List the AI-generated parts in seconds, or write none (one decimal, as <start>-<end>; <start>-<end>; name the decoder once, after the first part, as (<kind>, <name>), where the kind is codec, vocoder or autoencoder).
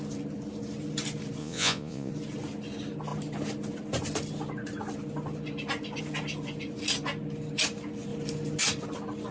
1.4-2.1 (vocoder, Vocos)